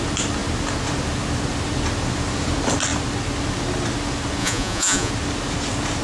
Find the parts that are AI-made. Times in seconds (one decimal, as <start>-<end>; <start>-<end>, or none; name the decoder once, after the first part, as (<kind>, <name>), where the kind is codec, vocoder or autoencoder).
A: 4.4-5.1 (vocoder, Vocos)